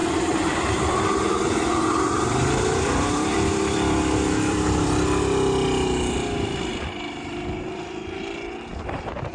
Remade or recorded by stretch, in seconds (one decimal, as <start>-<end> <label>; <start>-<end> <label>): 0.0-5.2 remade; 5.2-9.3 recorded